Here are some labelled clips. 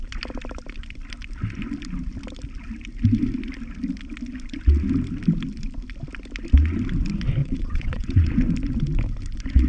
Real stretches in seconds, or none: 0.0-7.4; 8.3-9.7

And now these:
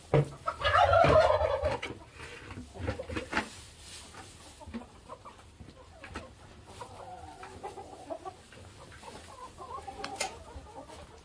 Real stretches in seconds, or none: 0.0-11.2